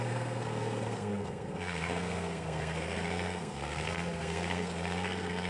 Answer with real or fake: fake